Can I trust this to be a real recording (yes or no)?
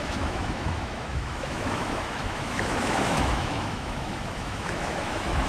no